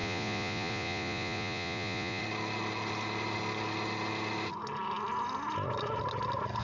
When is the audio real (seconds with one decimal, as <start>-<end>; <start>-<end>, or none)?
2.2-6.6